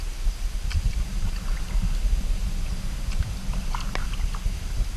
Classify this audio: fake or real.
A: real